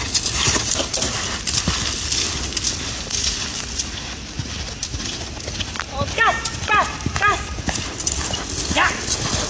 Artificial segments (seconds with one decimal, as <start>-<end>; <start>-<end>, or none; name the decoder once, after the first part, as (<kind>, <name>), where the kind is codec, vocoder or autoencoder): none